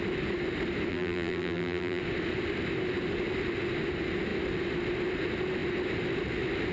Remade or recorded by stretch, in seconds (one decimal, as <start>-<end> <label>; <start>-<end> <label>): 0.0-0.9 recorded; 0.9-2.0 remade; 2.0-6.7 recorded